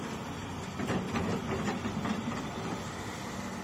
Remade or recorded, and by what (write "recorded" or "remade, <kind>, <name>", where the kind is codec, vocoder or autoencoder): remade, vocoder, BigVGAN v2